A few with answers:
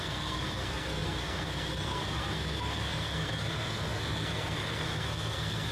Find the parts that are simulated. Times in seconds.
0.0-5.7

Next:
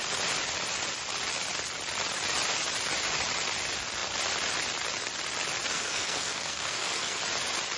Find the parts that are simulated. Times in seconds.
5.7-7.2

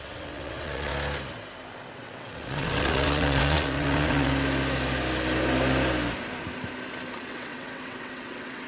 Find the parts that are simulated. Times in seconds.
0.0-0.9; 1.9-4.3; 7.1-8.7

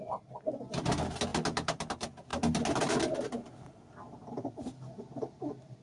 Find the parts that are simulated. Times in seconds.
none

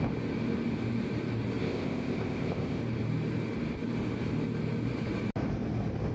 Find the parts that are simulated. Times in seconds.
1.6-2.8

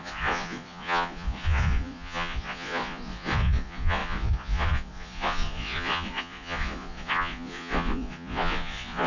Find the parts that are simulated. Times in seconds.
0.0-9.1

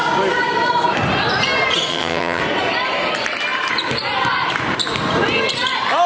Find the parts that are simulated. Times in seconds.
1.9-2.4